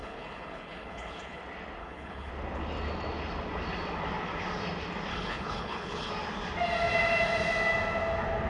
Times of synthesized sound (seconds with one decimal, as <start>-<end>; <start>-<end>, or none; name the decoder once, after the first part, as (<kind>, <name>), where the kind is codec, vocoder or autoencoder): 0.0-1.4 (codec, HILCodec); 1.8-2.3; 5.1-6.1